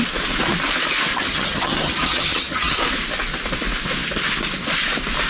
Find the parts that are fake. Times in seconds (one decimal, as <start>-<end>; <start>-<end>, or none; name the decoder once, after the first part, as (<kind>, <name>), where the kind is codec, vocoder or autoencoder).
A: 1.1-2.8 (vocoder, HiFi-GAN)